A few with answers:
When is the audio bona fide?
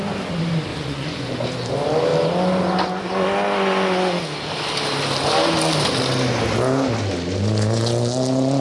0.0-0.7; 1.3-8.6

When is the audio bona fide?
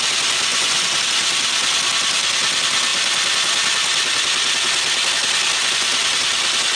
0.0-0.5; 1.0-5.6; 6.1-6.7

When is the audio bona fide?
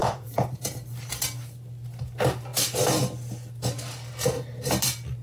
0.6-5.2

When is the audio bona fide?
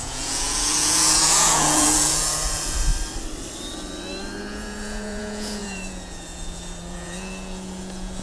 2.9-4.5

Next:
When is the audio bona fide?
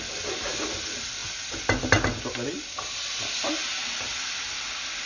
0.0-5.1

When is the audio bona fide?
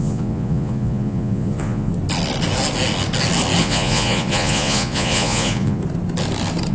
1.9-3.6; 5.8-6.7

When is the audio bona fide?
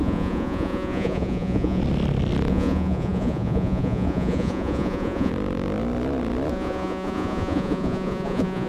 1.8-2.5; 5.3-6.5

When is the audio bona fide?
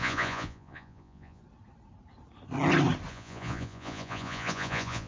1.4-3.1